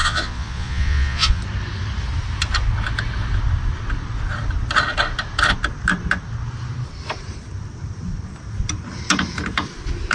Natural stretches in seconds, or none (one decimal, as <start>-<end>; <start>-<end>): 1.4-10.1